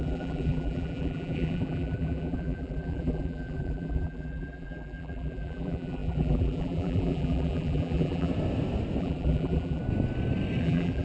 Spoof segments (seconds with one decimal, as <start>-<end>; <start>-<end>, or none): 0.0-8.3; 9.0-9.8; 10.6-11.0